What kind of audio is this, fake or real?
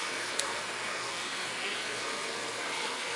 fake